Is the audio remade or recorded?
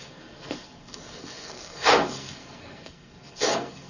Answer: remade